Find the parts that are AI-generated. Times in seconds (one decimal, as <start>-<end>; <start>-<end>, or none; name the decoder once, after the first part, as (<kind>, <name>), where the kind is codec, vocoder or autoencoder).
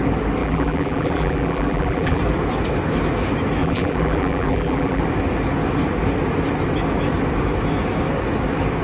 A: 0.4-2.2 (vocoder, BigVGAN v2); 3.6-5.0